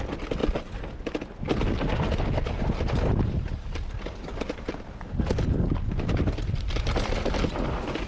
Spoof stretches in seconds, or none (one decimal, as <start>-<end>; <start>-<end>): none